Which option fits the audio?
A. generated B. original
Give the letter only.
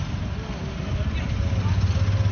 B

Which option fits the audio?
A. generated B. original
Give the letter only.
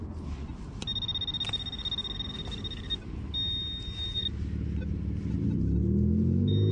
B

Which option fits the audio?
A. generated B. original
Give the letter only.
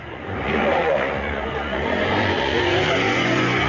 A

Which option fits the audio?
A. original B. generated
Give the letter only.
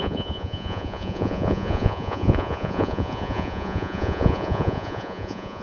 B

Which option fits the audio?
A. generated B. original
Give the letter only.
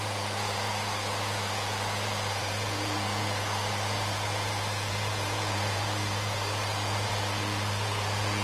A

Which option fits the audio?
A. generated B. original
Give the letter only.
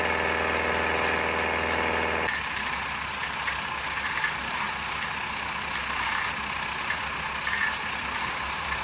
B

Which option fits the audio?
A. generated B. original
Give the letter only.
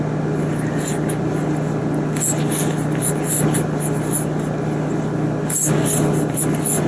B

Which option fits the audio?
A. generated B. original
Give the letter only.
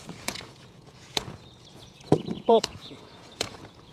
A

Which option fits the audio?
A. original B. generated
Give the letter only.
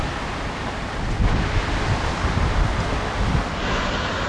A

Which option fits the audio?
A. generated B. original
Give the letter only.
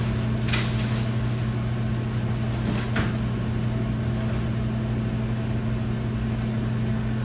B